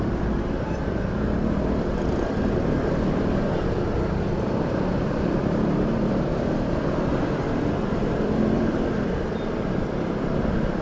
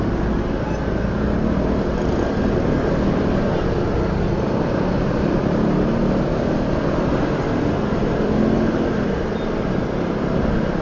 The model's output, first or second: first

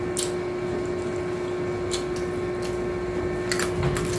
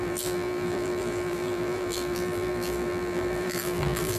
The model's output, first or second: second